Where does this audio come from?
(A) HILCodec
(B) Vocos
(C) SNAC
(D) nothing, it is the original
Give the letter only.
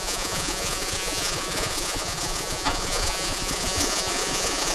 B